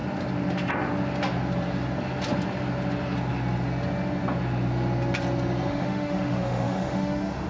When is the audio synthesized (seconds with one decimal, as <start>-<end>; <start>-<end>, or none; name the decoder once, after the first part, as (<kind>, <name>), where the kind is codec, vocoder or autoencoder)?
5.7-7.5 (autoencoder, DAC-VAE)